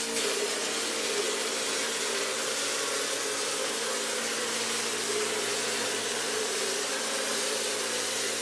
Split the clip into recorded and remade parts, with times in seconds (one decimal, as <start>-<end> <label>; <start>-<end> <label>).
0.0-5.8 recorded; 5.8-6.8 remade; 6.8-8.4 recorded